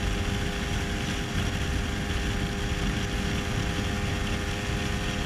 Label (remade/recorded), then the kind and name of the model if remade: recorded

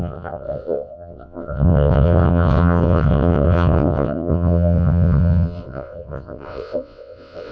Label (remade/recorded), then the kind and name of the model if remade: remade, vocoder, WaveNeXt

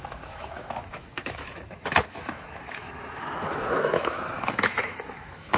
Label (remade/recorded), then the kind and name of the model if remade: remade, autoencoder, DAC-VAE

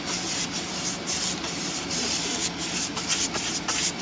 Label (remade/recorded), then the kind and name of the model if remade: remade, vocoder, BigVGAN v2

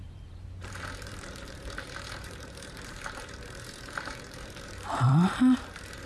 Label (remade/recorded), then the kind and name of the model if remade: remade, vocoder, BigVGAN v2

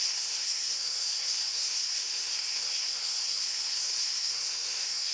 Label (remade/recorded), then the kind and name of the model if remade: remade, codec, SNAC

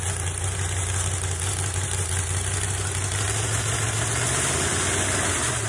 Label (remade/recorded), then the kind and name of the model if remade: recorded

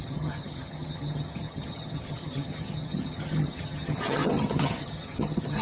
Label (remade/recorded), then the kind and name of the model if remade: remade, vocoder, HiFi-GAN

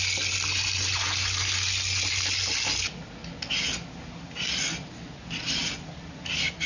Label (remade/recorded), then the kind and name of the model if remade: recorded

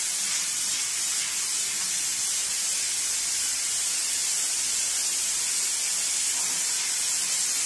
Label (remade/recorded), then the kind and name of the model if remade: recorded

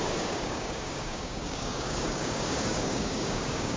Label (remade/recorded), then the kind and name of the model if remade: remade, codec, DAC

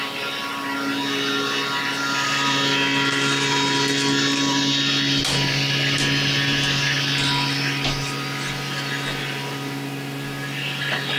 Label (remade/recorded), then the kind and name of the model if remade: recorded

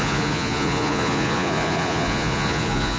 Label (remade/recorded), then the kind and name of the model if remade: remade, vocoder, Vocos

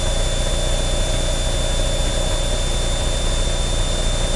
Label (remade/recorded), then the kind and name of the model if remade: recorded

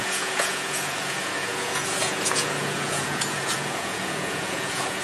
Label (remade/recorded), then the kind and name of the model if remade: remade, vocoder, Vocos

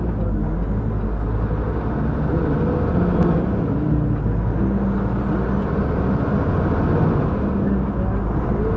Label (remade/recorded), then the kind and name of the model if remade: recorded